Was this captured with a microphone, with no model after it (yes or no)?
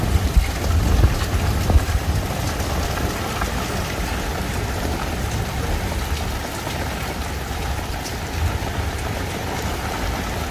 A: yes